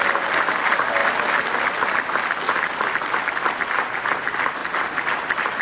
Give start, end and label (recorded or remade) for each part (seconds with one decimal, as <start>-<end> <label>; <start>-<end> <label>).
0.0-5.6 recorded